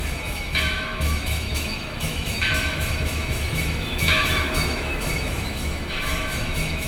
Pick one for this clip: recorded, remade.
remade